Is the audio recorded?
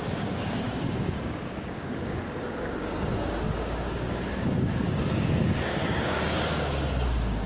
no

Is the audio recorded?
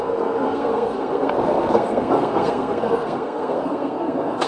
no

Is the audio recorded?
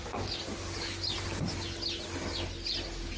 yes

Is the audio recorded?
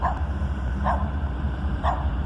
no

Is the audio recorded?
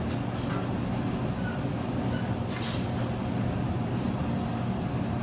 yes